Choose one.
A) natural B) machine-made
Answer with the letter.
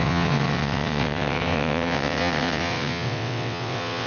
B